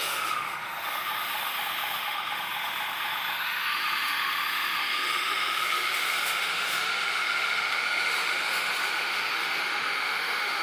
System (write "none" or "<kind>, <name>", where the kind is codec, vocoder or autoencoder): autoencoder, DAC-VAE